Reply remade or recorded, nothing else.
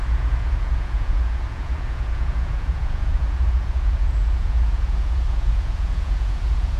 remade